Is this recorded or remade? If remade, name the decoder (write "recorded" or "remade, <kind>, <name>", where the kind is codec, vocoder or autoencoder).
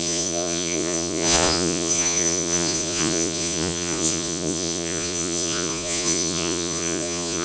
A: remade, vocoder, Vocos